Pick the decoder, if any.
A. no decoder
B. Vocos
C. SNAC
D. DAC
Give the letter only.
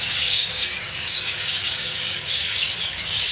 D